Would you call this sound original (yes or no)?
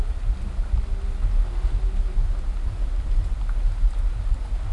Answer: yes